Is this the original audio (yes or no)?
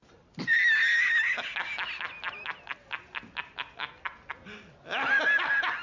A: yes